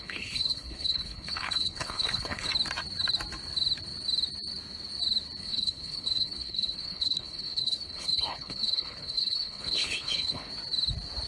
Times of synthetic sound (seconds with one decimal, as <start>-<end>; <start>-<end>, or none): 0.0-2.5; 5.4-10.5